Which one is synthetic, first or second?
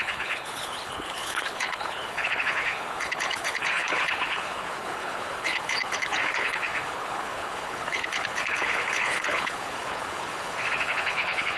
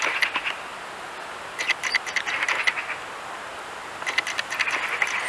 first